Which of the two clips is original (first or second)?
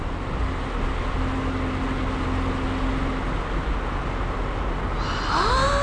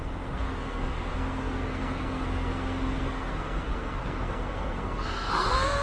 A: first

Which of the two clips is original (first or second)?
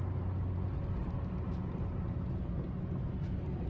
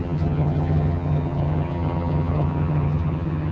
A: first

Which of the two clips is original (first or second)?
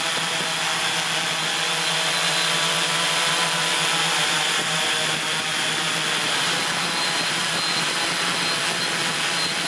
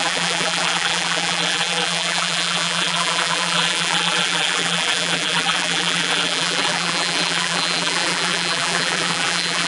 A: first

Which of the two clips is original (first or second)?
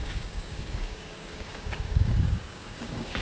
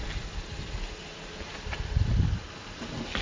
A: second